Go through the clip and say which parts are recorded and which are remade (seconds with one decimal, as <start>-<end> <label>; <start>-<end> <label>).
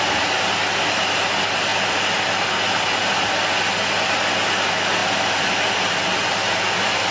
0.0-7.1 recorded